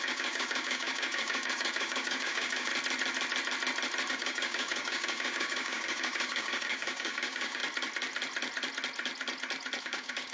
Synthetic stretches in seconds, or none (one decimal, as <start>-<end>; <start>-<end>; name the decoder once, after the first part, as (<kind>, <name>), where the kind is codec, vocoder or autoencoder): 0.0-2.7 (codec, DAC); 4.1-7.6; 9.8-10.3